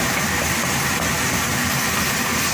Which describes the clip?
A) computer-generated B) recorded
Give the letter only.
B